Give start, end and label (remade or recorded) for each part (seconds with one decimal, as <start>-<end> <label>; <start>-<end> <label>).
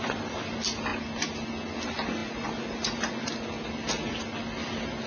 0.0-2.2 recorded; 2.2-3.1 remade; 3.1-5.1 recorded